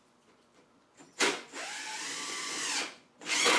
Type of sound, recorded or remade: remade